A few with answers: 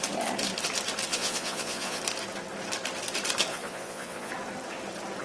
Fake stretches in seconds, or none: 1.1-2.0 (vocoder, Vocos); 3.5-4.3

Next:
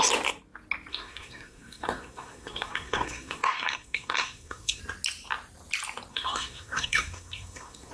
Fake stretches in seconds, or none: 0.9-4.8 (codec, SNAC); 6.1-7.9

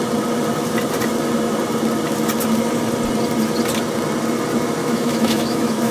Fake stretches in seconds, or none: 4.8-5.9 (autoencoder, DAC-VAE)

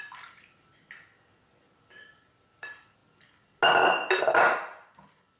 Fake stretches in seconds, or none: none